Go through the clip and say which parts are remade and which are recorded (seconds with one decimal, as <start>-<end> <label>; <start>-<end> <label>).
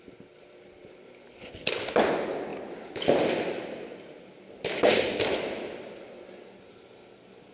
0.0-7.5 recorded